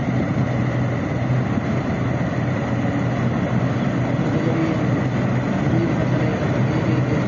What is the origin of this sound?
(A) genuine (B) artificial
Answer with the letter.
A